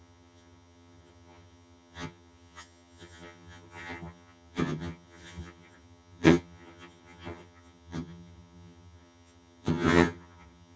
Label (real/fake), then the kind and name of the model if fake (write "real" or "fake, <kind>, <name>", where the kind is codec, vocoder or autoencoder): fake, vocoder, HiFi-GAN